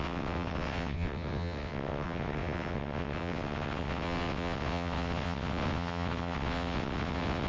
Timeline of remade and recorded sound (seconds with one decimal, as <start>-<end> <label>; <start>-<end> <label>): 0.0-7.5 remade